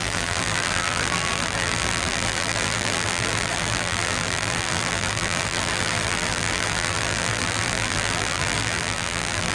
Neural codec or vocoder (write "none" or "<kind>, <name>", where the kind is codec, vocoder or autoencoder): vocoder, BigVGAN v2